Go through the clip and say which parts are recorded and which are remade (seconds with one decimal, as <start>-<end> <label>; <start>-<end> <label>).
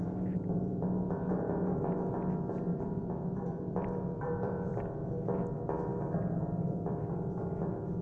0.0-2.7 recorded; 2.7-4.8 remade; 4.8-5.9 recorded; 5.9-7.6 remade; 7.6-8.0 recorded